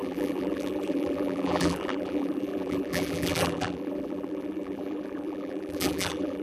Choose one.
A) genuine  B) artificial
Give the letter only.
B